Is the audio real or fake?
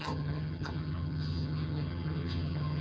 fake